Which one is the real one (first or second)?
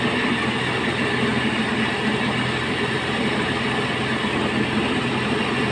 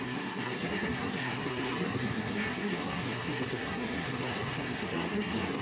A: first